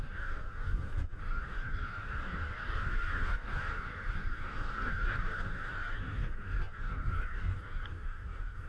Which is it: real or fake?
fake